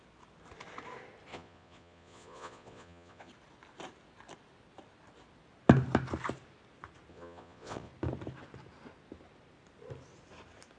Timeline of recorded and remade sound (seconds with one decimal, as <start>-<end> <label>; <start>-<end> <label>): 0.0-1.3 recorded; 1.3-3.3 remade; 3.3-7.1 recorded; 7.1-7.9 remade; 7.9-10.8 recorded